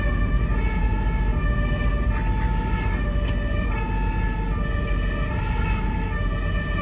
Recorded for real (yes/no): yes